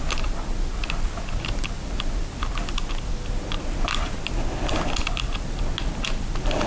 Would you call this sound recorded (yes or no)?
yes